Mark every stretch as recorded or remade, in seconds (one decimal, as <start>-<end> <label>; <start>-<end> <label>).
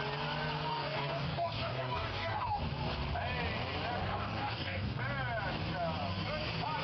0.0-0.7 recorded; 0.7-2.6 remade; 2.6-4.0 recorded; 4.0-5.0 remade; 5.0-6.8 recorded